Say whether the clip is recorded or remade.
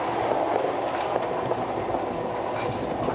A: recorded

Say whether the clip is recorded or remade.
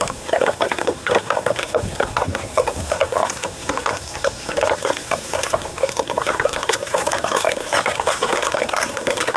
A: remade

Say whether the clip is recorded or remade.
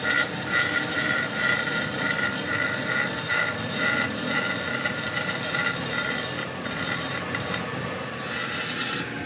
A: remade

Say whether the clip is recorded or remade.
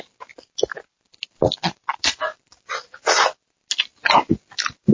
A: recorded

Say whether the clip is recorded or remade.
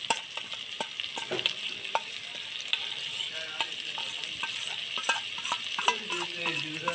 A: recorded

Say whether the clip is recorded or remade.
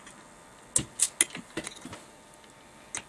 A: recorded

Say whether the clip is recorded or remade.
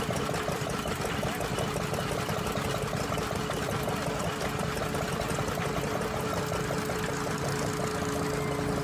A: recorded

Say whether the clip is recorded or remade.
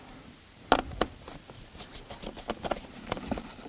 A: recorded